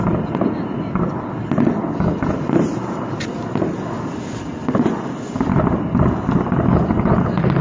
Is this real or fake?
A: real